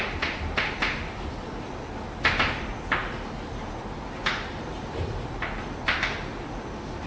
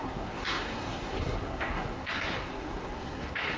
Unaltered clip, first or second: first